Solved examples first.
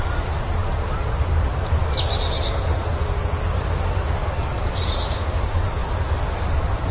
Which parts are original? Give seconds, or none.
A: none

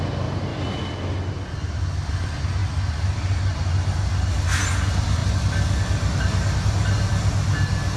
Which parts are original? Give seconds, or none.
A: 0.0-8.0

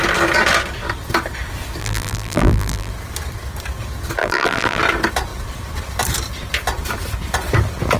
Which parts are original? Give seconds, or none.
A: 0.0-1.8; 2.9-4.2; 4.8-8.0

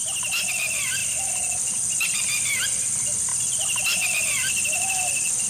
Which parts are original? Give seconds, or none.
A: 0.0-0.5

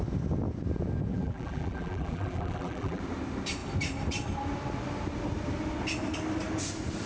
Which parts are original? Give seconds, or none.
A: 0.0-1.1; 3.0-7.1

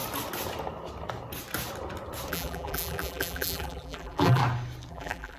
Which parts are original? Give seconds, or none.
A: 0.0-2.3; 4.4-4.9

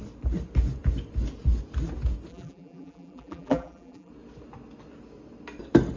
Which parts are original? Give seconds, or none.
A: 0.0-2.3; 4.1-6.0

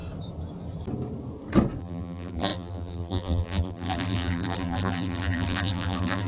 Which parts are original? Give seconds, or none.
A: 0.0-1.8